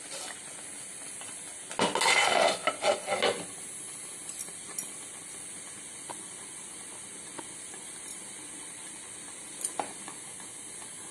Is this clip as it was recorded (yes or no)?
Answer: yes